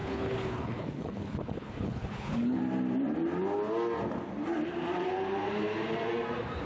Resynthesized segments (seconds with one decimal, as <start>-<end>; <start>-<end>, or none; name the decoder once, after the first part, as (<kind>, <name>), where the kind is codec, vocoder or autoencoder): 0.0-2.6 (codec, HILCodec)